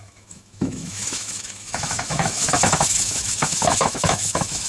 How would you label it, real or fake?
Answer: fake